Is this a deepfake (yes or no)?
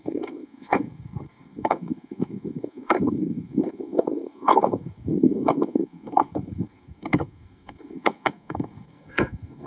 yes